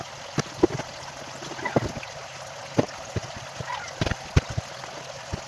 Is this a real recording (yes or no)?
yes